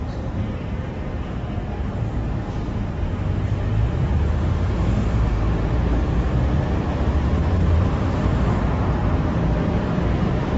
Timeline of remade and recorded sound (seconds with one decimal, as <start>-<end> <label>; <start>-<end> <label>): 0.0-9.0 remade; 9.0-9.7 recorded; 9.7-10.6 remade